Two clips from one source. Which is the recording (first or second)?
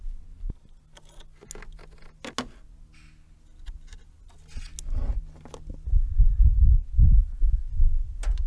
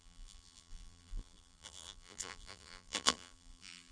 first